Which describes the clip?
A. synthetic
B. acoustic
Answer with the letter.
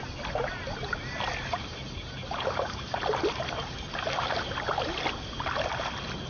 B